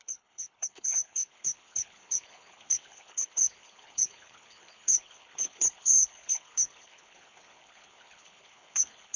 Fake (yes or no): yes